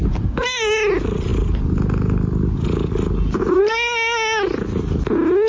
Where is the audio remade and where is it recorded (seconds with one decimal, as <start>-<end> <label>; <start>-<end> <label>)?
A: 0.0-5.5 recorded